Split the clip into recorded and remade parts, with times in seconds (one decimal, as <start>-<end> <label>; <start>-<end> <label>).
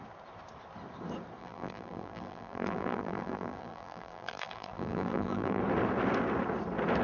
0.0-1.4 recorded; 1.4-5.6 remade; 5.6-7.0 recorded